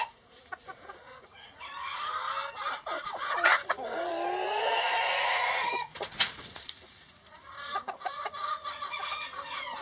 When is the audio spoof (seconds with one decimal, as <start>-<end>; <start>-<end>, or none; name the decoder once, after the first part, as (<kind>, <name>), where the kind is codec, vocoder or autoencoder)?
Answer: 0.0-2.1 (vocoder, Vocos); 2.9-4.1; 4.8-9.8